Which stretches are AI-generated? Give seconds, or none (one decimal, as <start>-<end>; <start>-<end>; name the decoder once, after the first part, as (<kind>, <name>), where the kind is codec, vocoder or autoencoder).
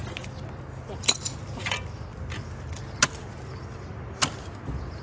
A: none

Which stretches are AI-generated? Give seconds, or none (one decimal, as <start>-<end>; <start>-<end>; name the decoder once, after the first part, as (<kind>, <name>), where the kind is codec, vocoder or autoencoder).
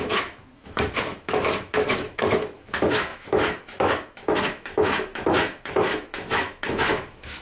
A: 0.0-7.4 (autoencoder, DAC-VAE)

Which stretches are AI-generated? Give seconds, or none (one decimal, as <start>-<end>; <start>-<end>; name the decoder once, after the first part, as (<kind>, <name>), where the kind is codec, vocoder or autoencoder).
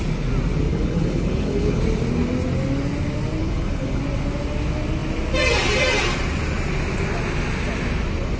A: 0.7-1.8 (codec, HILCodec); 3.4-4.0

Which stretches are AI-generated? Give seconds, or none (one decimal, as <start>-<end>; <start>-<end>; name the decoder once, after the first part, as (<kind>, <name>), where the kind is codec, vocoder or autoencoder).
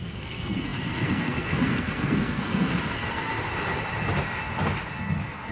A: 0.0-3.3 (codec, SNAC); 5.0-5.5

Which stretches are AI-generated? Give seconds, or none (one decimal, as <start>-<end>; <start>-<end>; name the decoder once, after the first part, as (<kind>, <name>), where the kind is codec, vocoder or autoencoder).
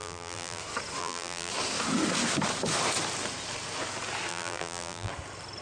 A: 0.0-0.6 (vocoder, BigVGAN v2); 1.0-1.5; 4.3-5.1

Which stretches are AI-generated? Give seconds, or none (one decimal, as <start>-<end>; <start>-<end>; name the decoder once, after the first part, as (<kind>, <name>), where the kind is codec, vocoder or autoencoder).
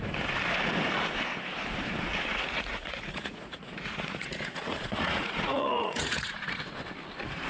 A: 2.3-6.8 (vocoder, Vocos)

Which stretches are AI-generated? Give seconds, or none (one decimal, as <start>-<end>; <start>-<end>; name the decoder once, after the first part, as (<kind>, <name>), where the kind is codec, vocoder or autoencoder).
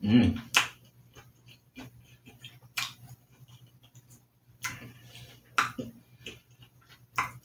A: 1.2-5.3 (vocoder, BigVGAN v2); 5.8-6.6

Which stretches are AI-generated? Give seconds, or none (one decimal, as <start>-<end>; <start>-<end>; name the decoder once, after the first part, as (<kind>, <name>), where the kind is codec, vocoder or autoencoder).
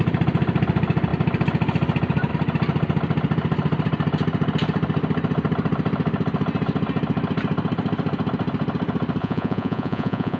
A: 9.2-10.4 (vocoder, Vocos)